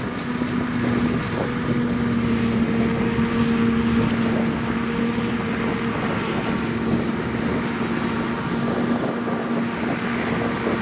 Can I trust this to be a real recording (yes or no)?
yes